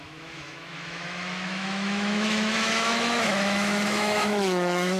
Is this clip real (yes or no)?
no